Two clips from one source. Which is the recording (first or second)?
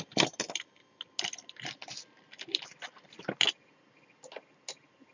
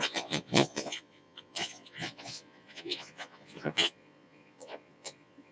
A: first